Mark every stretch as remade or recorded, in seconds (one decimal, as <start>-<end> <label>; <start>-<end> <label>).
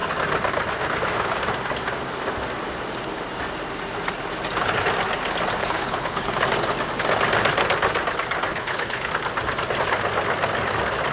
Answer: 0.0-5.6 recorded; 5.6-6.3 remade; 6.3-8.5 recorded; 8.5-9.1 remade; 9.1-11.1 recorded